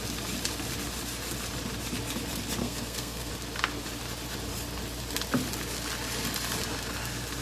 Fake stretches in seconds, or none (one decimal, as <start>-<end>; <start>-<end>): 2.6-3.3